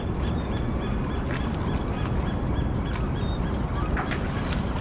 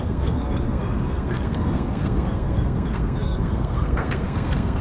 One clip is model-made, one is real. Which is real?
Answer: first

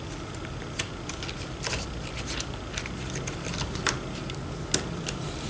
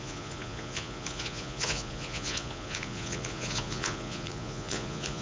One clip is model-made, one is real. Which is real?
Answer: first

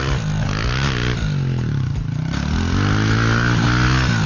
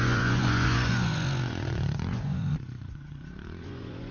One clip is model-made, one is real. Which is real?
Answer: first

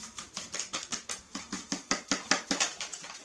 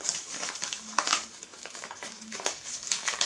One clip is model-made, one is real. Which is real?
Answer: first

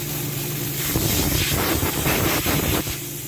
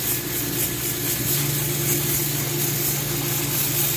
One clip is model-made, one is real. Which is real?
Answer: second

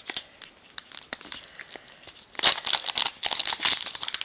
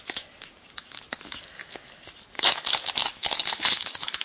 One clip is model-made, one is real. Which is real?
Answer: first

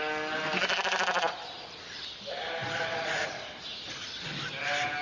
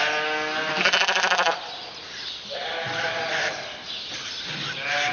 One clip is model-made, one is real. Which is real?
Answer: second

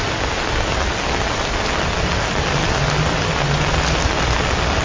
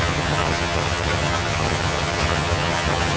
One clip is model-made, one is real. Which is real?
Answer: first